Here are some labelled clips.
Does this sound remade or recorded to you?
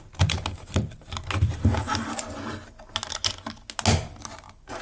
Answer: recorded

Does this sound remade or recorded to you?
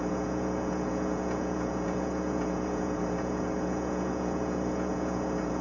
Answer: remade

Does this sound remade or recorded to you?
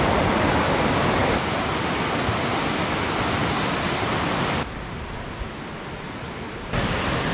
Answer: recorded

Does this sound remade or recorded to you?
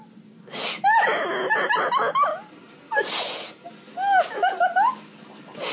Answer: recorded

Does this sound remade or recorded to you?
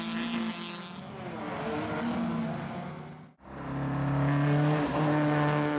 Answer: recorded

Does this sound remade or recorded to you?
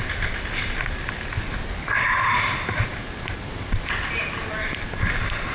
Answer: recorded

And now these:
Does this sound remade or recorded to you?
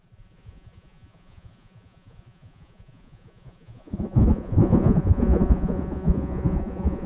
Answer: remade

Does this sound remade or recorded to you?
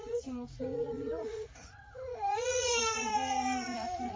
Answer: remade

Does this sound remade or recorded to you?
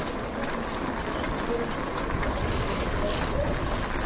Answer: recorded